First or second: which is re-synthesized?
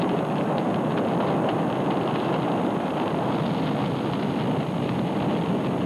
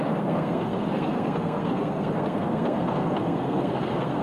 second